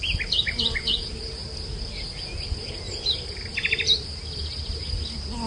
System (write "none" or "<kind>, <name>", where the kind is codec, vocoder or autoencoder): none